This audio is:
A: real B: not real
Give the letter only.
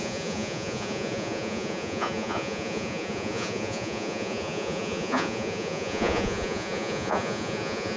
B